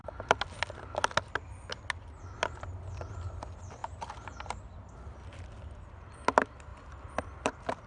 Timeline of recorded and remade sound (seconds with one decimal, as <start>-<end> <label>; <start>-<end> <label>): 0.0-7.9 recorded